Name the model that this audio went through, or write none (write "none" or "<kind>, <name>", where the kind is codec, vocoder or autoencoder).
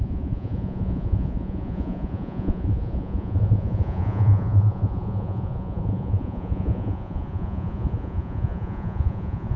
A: vocoder, Vocos